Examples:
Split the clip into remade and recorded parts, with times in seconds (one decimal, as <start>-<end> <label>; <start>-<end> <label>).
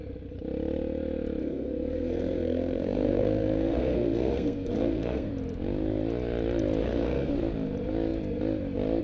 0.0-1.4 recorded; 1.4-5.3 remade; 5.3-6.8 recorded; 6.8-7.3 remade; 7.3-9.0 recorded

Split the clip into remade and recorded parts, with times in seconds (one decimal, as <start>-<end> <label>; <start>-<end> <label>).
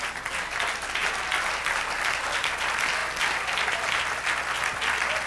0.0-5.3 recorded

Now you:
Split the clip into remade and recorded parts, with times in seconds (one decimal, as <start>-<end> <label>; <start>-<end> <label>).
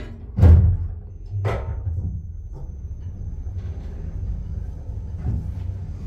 0.0-6.1 recorded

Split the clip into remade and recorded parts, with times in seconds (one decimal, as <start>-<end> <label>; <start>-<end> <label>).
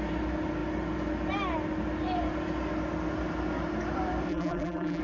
0.0-4.3 recorded; 4.3-5.0 remade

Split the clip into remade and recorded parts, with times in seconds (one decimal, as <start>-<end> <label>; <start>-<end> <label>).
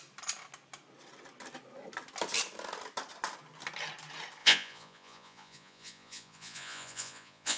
0.0-4.4 recorded; 4.4-7.6 remade